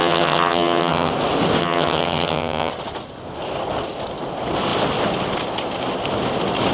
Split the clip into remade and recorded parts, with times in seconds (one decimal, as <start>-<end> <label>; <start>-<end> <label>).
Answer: 0.0-1.1 remade; 1.1-1.6 recorded; 1.6-2.7 remade; 2.7-6.7 recorded